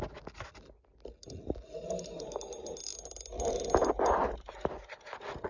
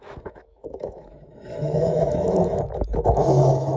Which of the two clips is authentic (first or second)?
first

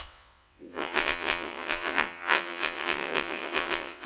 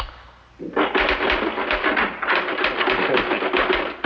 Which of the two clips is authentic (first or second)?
second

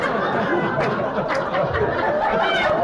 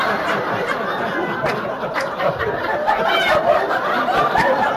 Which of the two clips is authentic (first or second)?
first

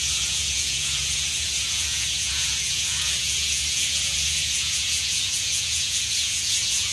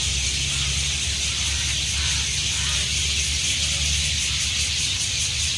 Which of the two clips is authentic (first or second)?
second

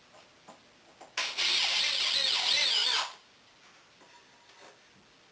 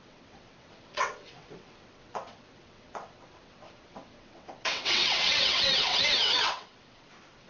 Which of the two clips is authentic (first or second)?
first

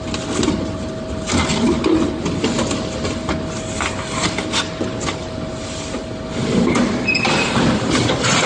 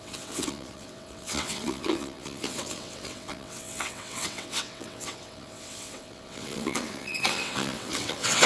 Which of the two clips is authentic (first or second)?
first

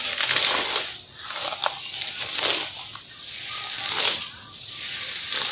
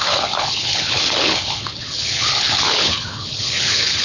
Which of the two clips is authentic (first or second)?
first